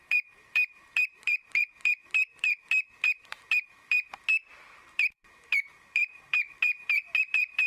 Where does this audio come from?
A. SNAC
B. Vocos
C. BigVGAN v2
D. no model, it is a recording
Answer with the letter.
C